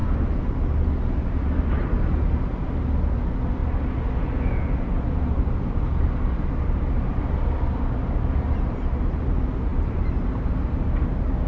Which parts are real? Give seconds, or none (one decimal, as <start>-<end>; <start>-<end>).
0.0-11.5